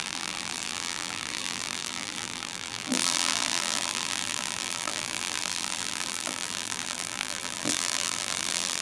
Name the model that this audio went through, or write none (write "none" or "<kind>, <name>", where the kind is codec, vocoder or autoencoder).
vocoder, BigVGAN v2